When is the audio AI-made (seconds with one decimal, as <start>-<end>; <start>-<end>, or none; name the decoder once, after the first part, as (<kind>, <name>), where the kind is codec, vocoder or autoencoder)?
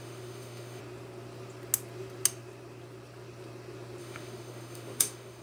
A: 0.0-0.8 (autoencoder, DAC-VAE); 4.0-5.4